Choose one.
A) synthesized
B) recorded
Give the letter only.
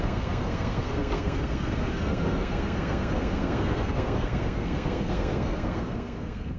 A